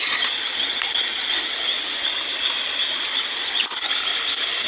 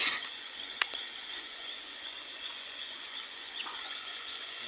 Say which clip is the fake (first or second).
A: second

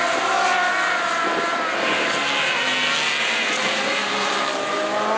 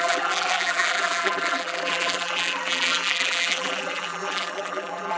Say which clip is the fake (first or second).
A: second